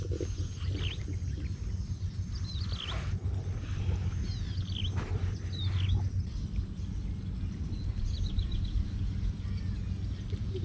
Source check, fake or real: real